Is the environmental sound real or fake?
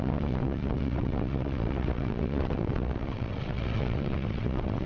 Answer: fake